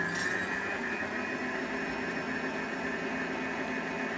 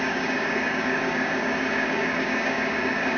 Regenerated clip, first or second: second